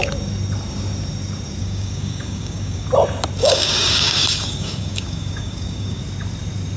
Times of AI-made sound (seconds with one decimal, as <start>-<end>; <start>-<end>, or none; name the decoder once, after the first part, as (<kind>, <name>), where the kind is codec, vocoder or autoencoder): 1.6-2.9 (codec, DAC); 3.4-6.0